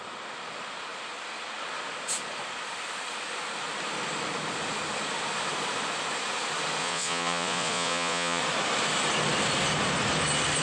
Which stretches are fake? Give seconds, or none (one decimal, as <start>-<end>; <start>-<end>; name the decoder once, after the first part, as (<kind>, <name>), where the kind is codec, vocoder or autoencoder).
6.8-8.4 (vocoder, Vocos)